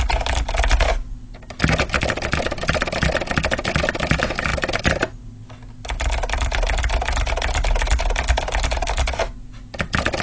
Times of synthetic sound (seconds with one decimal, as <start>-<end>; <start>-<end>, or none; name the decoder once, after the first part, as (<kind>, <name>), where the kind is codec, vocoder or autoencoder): 4.5-5.1 (vocoder, BigVGAN v2)